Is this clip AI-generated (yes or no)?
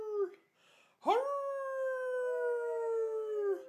no